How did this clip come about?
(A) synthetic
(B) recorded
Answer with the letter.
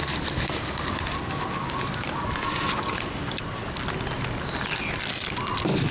B